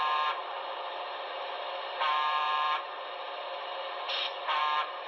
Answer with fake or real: fake